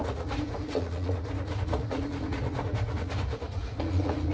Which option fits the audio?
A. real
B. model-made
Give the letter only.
B